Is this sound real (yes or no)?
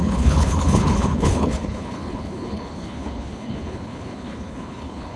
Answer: no